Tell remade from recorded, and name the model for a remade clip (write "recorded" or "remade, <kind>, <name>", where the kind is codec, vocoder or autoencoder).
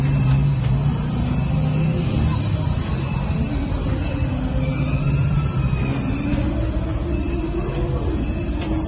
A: recorded